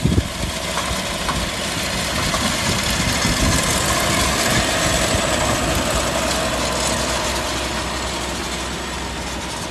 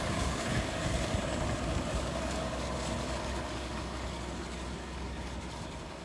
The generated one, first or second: second